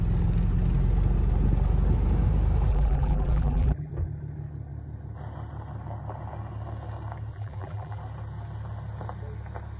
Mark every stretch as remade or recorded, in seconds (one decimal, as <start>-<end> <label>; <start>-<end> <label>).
0.0-2.7 recorded; 2.7-3.9 remade; 3.9-7.3 recorded; 7.3-8.0 remade; 8.0-9.8 recorded